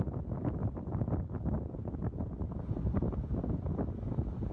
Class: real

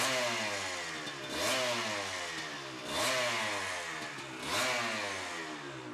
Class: real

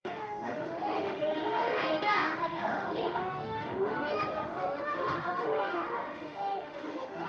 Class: fake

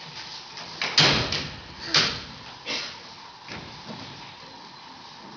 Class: real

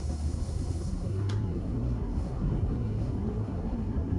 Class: fake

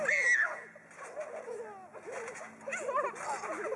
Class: real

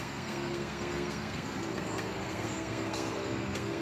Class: fake